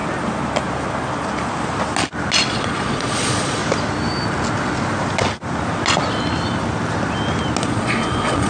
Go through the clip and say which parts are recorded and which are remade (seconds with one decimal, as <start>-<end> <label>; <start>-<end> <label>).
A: 0.0-2.5 recorded; 2.5-3.6 remade; 3.6-7.6 recorded; 7.6-8.5 remade